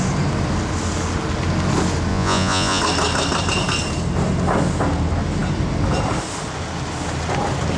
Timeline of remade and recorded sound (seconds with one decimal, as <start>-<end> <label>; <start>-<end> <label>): 0.0-2.1 recorded; 2.1-2.8 remade; 2.8-7.8 recorded